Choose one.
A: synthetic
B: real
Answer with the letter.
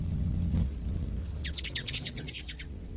A